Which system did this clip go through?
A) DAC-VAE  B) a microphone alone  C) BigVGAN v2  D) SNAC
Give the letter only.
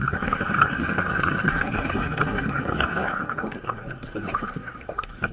D